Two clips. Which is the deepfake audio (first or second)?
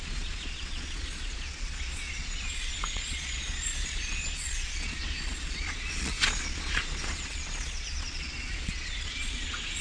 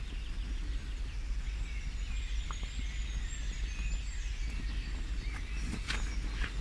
first